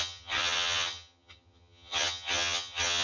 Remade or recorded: remade